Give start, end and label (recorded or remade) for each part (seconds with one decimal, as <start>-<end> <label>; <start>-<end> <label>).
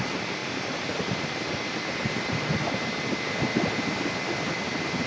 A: 0.0-5.1 recorded